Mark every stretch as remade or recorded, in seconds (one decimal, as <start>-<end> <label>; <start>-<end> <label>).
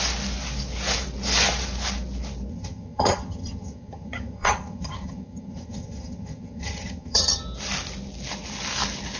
0.0-2.5 recorded; 2.5-7.4 remade; 7.4-9.2 recorded